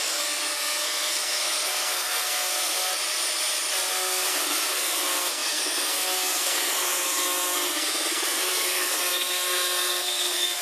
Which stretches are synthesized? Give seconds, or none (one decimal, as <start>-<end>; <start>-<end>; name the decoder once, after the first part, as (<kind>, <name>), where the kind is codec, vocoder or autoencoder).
0.0-2.9 (codec, SNAC); 3.9-10.6